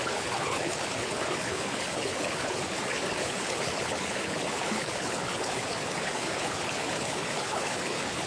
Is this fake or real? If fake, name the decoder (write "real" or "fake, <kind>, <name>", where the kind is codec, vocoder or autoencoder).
fake, codec, HILCodec